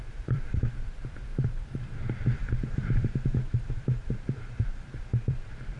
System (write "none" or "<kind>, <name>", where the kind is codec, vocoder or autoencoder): vocoder, BigVGAN v2